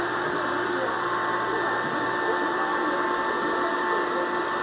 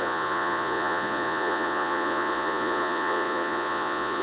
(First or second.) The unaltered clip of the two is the first